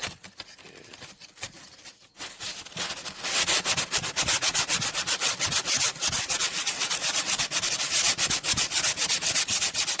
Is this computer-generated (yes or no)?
no